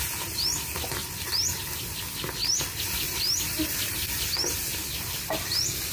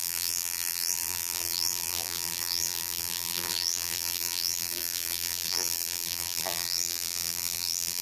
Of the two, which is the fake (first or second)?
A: second